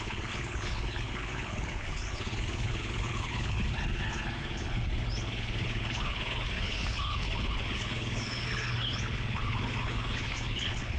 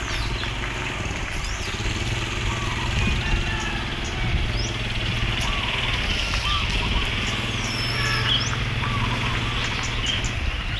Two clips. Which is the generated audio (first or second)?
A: first